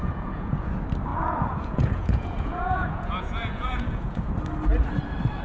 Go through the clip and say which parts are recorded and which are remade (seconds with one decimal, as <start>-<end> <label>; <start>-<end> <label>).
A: 0.0-0.7 remade; 0.7-1.1 recorded; 1.1-4.3 remade; 4.3-5.4 recorded